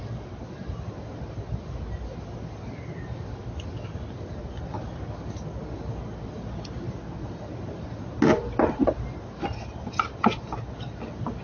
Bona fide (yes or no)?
yes